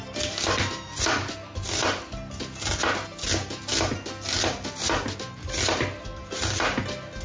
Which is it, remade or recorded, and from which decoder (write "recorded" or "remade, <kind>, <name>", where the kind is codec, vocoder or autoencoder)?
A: recorded